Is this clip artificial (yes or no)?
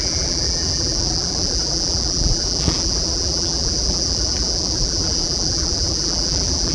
yes